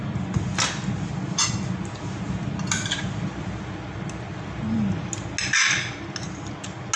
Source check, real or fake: real